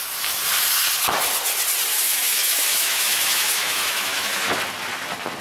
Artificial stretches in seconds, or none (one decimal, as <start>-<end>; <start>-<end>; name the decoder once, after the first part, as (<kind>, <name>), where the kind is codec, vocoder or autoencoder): 1.9-4.5 (autoencoder, DAC-VAE)